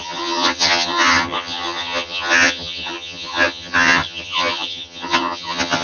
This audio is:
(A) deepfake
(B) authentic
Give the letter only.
A